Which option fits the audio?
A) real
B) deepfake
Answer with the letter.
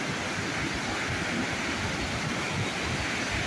A